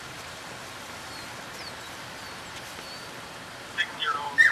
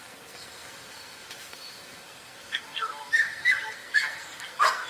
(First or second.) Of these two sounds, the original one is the first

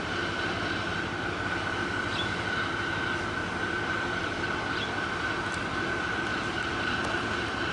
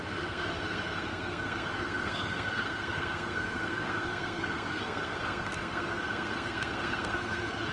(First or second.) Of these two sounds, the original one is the first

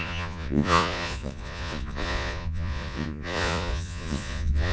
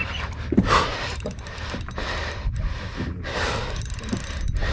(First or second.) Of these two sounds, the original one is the second